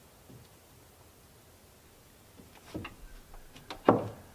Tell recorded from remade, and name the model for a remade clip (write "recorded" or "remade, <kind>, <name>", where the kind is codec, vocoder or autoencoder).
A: recorded